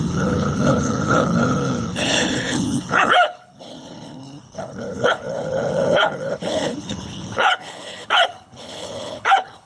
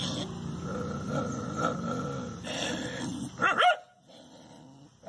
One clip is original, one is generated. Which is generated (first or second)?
first